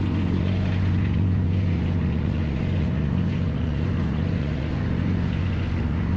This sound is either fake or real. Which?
fake